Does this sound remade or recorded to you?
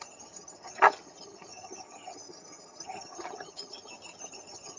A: remade